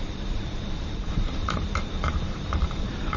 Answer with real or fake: fake